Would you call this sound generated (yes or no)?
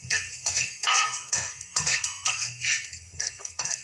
yes